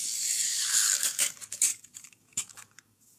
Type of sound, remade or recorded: remade